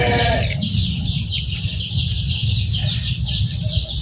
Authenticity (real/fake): fake